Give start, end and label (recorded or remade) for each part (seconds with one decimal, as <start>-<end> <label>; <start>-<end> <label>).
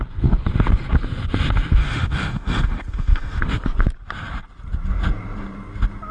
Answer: 0.0-1.8 recorded; 1.8-3.4 remade; 3.4-6.1 recorded